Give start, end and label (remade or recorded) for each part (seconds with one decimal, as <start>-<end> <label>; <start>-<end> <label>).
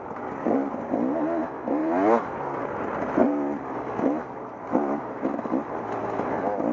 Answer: 0.0-1.8 recorded; 1.8-2.4 remade; 2.4-3.2 recorded; 3.2-5.7 remade; 5.7-6.7 recorded